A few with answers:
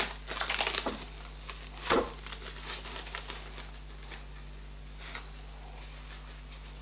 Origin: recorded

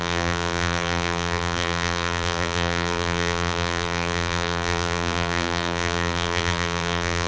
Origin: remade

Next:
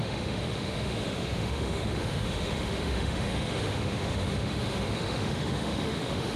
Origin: remade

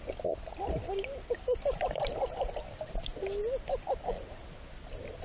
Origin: recorded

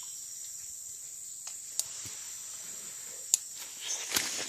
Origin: recorded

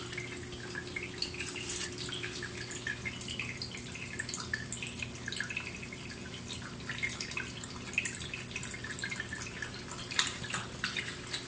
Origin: recorded